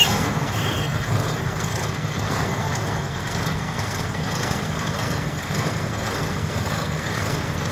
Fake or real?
fake